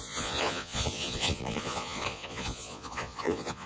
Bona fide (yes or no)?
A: no